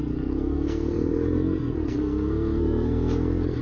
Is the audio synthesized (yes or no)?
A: yes